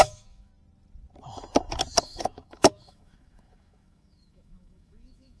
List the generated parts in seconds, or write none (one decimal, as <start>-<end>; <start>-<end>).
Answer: 0.0-0.5; 2.0-5.4